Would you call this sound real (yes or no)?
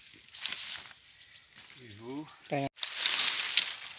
yes